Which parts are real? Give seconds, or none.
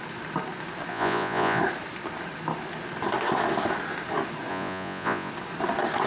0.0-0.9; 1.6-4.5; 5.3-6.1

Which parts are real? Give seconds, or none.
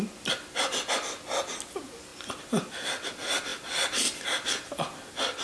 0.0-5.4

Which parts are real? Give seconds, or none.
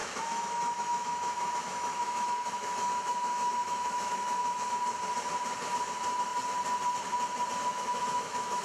4.7-7.7